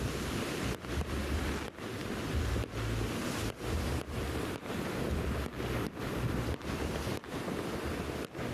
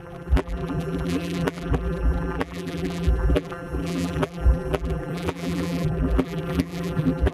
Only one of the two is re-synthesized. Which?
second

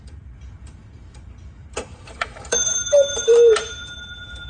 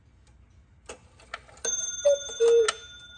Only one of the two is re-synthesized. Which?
first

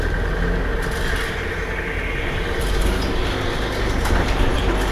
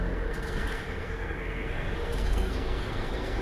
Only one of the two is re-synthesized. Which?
second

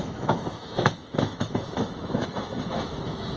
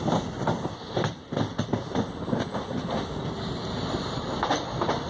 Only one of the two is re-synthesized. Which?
first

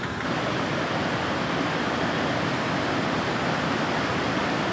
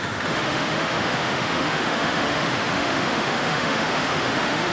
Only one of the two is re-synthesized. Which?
second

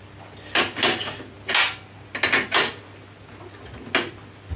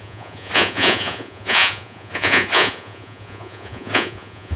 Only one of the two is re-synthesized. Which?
second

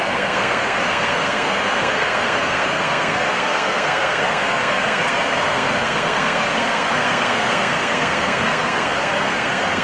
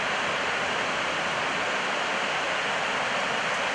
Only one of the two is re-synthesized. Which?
first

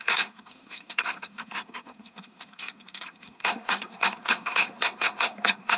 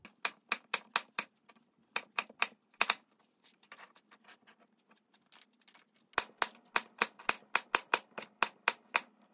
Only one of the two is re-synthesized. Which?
first